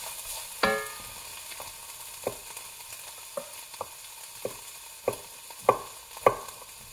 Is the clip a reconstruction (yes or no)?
no